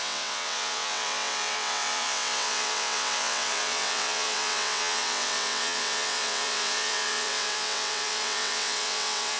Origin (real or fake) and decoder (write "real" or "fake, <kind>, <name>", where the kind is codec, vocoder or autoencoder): fake, vocoder, WaveNeXt